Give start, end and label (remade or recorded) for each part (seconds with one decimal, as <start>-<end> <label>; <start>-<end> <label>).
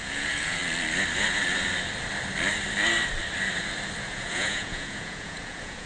0.0-0.6 remade; 0.6-4.1 recorded; 4.1-5.9 remade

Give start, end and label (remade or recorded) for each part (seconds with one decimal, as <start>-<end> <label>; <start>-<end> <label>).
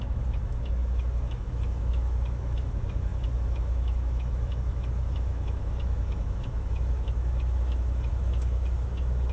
0.0-9.3 remade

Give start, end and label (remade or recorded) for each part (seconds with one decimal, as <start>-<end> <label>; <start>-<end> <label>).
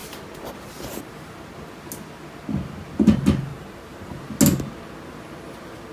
0.0-3.5 recorded; 3.5-4.2 remade; 4.2-5.9 recorded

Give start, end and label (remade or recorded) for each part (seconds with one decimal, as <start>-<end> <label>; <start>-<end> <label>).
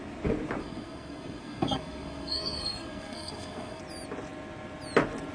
0.0-0.6 recorded; 0.6-3.8 remade; 3.8-5.3 recorded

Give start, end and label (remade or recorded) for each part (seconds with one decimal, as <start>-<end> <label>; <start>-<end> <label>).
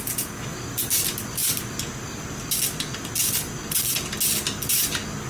0.0-5.3 recorded